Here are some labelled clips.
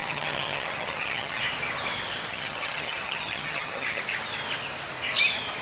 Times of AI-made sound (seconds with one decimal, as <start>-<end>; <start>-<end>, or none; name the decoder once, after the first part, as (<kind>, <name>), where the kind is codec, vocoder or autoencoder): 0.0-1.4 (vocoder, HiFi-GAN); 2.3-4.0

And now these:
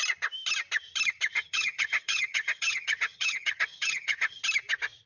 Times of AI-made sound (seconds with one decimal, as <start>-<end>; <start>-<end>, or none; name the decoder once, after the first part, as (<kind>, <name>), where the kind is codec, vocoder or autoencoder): 1.3-4.4 (vocoder, HiFi-GAN)

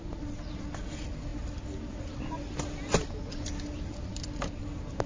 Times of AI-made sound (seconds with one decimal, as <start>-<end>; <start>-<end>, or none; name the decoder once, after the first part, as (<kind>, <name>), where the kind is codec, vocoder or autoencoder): none